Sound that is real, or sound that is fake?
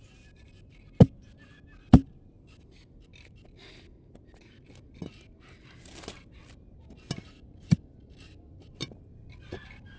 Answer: real